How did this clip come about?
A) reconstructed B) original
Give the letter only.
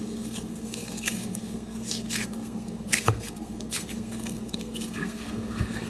A